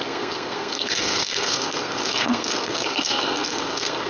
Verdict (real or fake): fake